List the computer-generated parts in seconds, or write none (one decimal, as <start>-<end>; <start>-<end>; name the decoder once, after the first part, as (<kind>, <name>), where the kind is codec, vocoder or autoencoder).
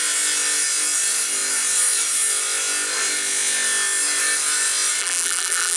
5.0-5.8 (vocoder, BigVGAN v2)